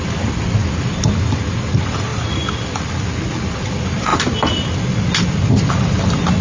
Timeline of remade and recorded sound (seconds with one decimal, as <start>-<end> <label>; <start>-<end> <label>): 0.0-6.4 recorded